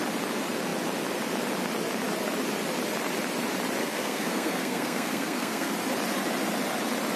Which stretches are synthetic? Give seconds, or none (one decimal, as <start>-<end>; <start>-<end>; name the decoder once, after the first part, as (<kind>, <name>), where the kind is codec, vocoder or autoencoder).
3.8-5.7 (codec, SNAC)